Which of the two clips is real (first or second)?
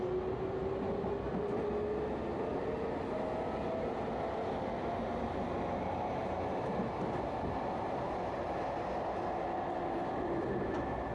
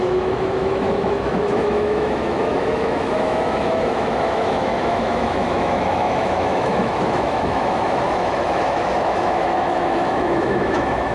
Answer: first